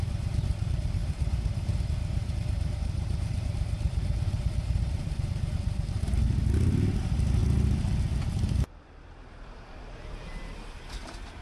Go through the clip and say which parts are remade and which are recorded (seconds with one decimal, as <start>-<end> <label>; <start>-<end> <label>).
0.0-7.4 remade; 7.4-8.4 recorded; 8.4-11.4 remade